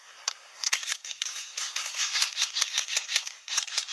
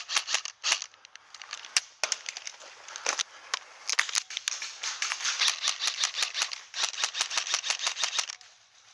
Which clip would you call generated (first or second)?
first